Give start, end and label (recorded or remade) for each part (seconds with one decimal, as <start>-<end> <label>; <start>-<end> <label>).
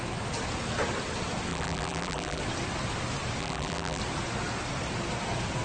0.0-1.5 recorded; 1.5-2.4 remade; 2.4-3.4 recorded; 3.4-4.0 remade; 4.0-5.6 recorded